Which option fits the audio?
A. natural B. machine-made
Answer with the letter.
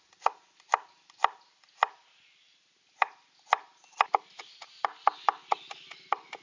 A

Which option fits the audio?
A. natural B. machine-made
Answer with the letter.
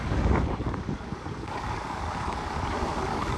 B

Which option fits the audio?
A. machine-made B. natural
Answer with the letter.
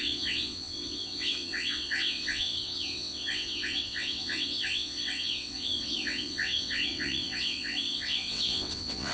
A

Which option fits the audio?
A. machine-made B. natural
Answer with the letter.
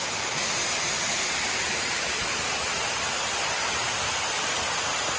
B